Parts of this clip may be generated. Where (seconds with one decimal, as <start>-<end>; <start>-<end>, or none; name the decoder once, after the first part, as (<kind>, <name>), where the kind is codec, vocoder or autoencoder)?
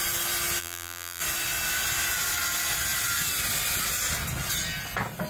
0.6-1.2 (vocoder, BigVGAN v2)